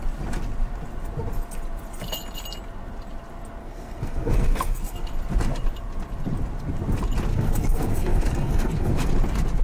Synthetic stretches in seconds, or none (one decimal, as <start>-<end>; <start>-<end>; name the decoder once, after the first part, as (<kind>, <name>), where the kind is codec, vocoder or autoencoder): 3.6-5.1 (codec, SNAC); 7.3-9.1

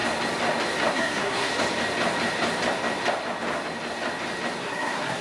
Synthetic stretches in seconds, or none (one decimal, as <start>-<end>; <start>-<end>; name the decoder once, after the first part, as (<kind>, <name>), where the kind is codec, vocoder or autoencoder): 0.9-1.5 (codec, SNAC); 4.6-5.2

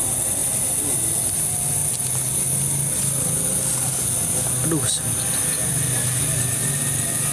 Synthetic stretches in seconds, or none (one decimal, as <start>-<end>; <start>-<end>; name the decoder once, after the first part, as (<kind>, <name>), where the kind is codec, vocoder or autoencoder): none